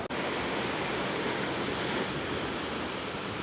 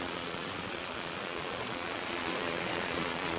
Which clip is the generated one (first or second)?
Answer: second